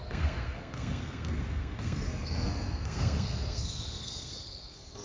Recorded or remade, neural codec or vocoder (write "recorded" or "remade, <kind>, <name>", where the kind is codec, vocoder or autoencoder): remade, codec, SNAC